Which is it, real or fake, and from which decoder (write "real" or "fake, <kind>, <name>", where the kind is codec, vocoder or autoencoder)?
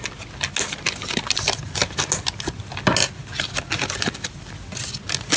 real